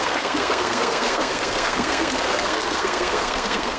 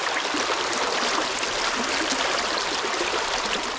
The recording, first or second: second